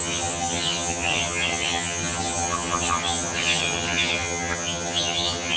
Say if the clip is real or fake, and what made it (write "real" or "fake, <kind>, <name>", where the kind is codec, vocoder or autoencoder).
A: fake, vocoder, HiFi-GAN